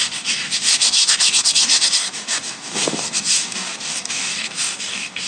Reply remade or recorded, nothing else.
remade